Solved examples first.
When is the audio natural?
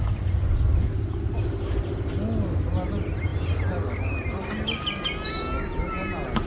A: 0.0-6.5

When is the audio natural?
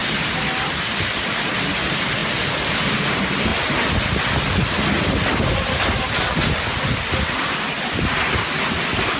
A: 0.0-9.2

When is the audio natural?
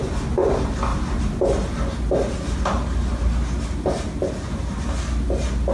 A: 0.0-5.7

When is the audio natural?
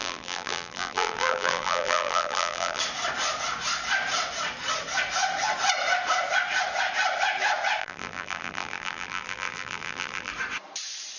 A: 2.8-7.8; 10.3-11.2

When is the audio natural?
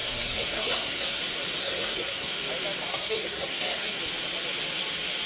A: 1.2-1.6; 2.3-2.9; 4.0-5.3